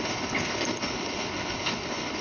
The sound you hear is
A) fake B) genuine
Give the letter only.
A